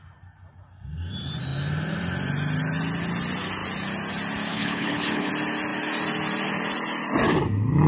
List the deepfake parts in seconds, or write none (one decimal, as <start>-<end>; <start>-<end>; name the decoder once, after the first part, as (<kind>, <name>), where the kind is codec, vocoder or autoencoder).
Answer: 4.5-5.3 (codec, HILCodec)